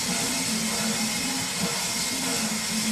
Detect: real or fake real